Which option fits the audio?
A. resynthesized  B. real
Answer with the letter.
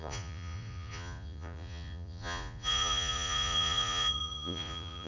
A